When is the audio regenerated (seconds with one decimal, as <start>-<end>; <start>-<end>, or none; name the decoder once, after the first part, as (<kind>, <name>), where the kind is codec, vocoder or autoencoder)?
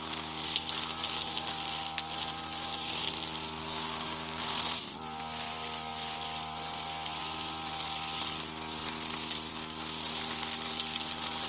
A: 3.6-4.4 (codec, DAC)